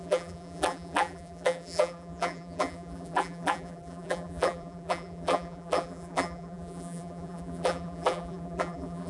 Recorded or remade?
remade